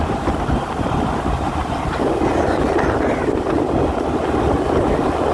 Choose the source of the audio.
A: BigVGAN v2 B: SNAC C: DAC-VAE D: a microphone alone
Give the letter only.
D